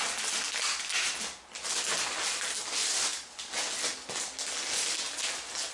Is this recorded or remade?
recorded